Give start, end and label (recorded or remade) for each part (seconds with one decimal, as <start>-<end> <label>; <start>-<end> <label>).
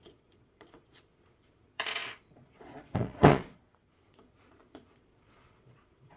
0.0-6.2 remade